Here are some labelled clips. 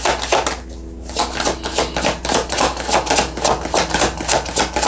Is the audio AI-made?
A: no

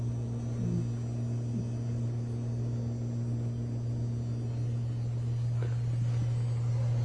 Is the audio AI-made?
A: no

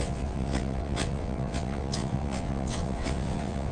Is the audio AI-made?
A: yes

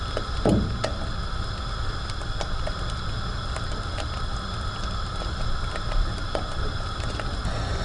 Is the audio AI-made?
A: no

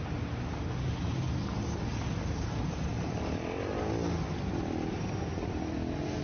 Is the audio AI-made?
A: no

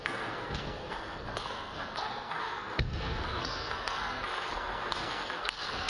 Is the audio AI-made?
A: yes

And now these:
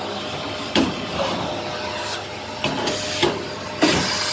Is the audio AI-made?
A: no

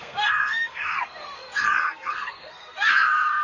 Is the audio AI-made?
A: yes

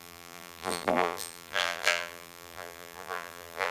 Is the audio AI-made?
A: yes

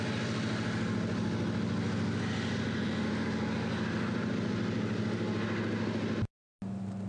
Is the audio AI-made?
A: no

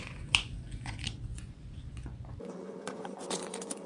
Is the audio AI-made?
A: yes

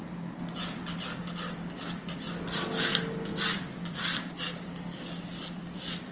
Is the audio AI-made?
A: no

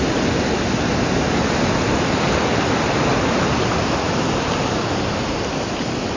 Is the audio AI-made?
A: no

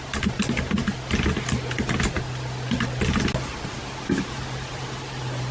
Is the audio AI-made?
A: no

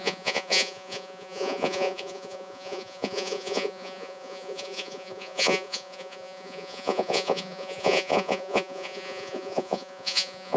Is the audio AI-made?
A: yes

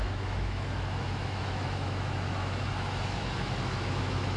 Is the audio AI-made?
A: yes